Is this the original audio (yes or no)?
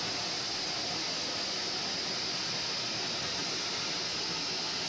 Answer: yes